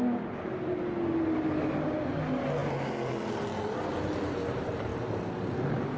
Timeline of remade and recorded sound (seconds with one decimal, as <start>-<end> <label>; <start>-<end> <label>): 0.0-6.0 recorded